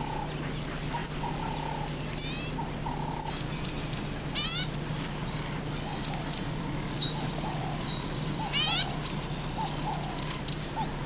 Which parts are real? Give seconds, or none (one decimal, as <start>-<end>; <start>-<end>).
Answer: 0.0-11.1